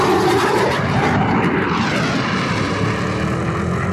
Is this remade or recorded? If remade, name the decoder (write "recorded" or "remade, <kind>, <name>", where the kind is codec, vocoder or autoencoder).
remade, vocoder, BigVGAN v2